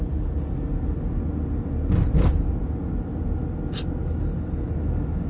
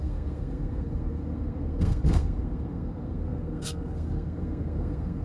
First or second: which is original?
first